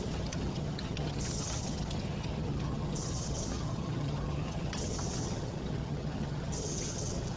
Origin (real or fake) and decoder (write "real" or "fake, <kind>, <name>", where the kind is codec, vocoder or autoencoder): fake, vocoder, HiFi-GAN